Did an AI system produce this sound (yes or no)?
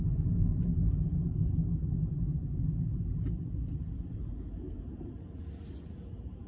no